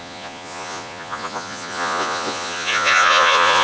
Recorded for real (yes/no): no